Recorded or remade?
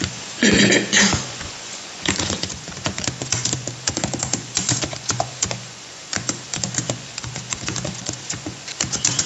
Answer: remade